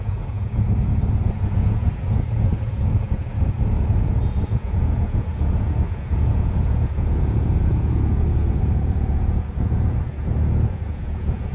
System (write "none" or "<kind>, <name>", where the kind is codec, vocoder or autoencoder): vocoder, Vocos